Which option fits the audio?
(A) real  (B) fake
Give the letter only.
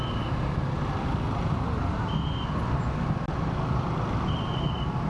A